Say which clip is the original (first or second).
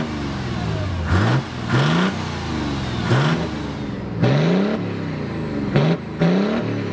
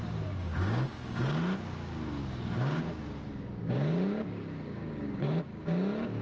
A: first